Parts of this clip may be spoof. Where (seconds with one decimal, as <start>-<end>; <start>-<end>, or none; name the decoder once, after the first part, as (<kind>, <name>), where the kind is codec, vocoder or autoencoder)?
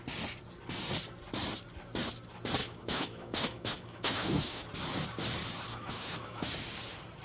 2.6-4.7 (autoencoder, DAC-VAE); 5.7-6.5